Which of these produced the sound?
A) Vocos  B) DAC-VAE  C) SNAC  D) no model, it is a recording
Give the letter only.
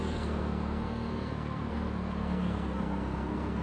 C